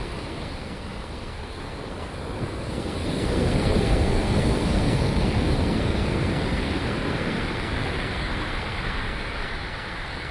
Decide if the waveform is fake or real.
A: fake